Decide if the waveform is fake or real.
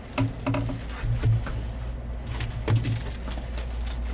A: real